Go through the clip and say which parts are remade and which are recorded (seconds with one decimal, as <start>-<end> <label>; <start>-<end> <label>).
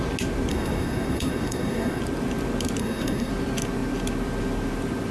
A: 0.0-0.5 recorded; 0.5-2.0 remade; 2.0-2.8 recorded; 2.8-3.3 remade; 3.3-5.1 recorded